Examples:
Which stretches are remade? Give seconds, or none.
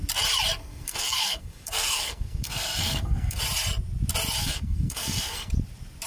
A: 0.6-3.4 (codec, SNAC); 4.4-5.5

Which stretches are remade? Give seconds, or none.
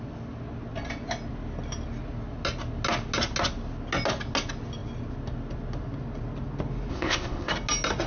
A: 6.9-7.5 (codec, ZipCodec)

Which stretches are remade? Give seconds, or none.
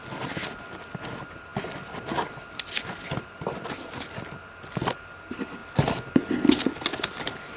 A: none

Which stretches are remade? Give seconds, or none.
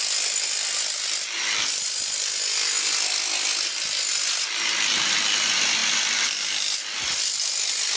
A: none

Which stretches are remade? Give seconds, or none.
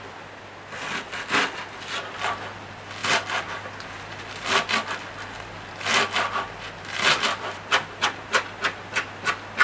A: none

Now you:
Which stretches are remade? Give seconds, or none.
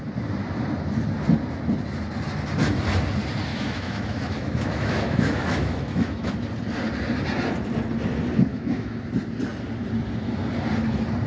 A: 3.5-6.3 (autoencoder, DAC-VAE); 8.5-9.0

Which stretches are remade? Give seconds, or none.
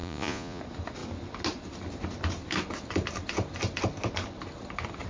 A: 0.0-0.6 (vocoder, Vocos)